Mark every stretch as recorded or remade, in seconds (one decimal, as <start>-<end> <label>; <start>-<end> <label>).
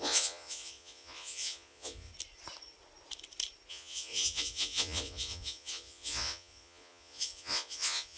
0.0-2.1 remade; 2.1-3.7 recorded; 3.7-8.2 remade